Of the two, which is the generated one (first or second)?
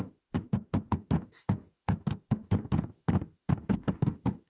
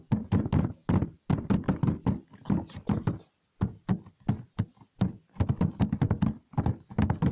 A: first